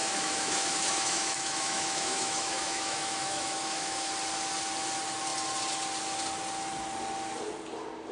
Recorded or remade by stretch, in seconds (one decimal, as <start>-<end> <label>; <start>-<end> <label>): 0.0-4.1 remade; 4.1-8.1 recorded